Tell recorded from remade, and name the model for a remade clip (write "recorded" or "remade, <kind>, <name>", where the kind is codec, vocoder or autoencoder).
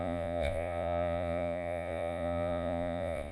remade, vocoder, Vocos